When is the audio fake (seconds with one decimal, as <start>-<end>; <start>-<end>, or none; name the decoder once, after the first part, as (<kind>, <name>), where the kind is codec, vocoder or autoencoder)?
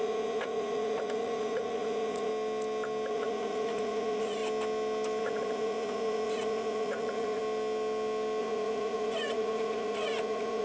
0.0-2.3 (vocoder, Vocos); 3.1-4.4; 5.2-7.4; 8.4-10.6